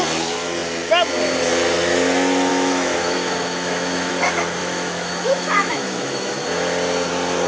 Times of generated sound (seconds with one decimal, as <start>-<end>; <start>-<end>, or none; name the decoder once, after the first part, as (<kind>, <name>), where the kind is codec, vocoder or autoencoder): 2.5-4.1 (autoencoder, DAC-VAE); 4.6-6.3